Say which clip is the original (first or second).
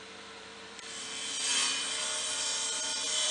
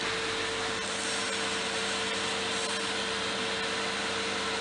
second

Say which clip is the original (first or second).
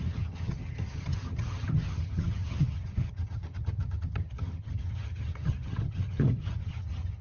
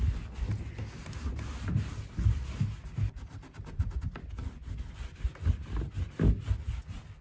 second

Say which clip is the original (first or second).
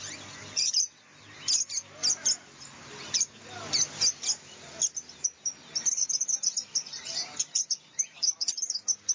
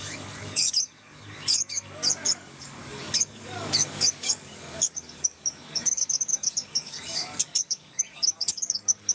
first